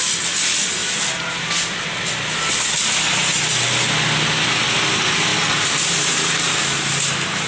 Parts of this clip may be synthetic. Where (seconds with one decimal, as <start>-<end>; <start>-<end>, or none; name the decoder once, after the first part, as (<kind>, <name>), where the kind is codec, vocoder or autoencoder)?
none